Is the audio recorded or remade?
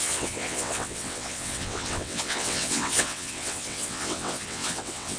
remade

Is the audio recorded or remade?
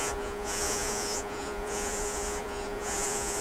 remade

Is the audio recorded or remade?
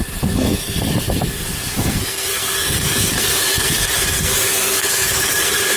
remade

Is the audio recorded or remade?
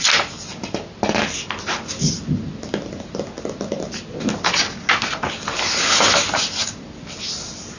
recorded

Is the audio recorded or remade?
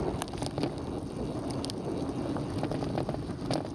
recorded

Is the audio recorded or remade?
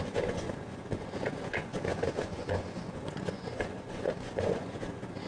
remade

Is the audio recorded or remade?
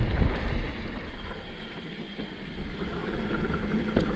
recorded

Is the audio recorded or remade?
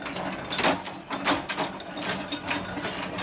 recorded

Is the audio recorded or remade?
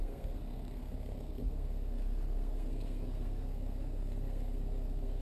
remade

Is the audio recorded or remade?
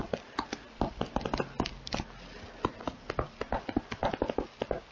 recorded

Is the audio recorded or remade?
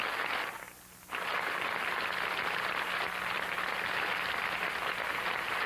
recorded